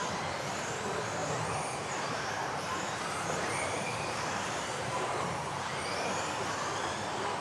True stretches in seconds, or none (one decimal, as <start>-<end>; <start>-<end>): 0.0-1.2; 5.6-7.4